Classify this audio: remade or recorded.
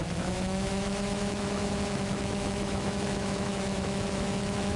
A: remade